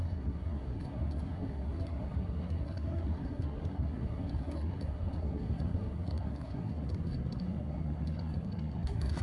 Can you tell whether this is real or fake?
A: fake